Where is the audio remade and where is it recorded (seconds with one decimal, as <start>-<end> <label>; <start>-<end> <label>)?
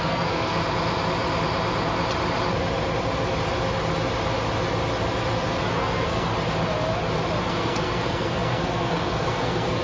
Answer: 0.0-0.5 remade; 0.5-5.7 recorded; 5.7-6.3 remade; 6.3-7.5 recorded; 7.5-9.8 remade